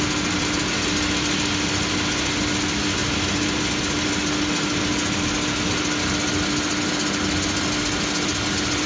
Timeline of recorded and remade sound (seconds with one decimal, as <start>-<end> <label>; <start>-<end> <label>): 0.0-8.9 recorded